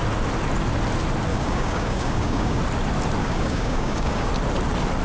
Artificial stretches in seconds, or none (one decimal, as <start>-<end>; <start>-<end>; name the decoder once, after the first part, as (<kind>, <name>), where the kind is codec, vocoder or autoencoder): 1.3-2.6 (codec, DAC); 3.2-4.3